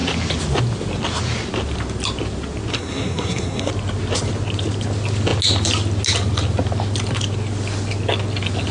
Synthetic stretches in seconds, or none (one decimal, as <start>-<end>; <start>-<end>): 2.7-3.7